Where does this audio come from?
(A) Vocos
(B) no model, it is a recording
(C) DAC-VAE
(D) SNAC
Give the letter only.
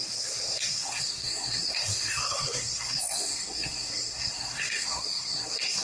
D